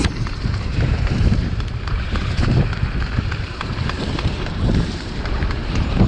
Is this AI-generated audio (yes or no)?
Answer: yes